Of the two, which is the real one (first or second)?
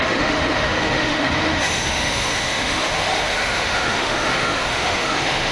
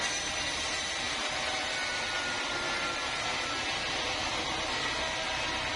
second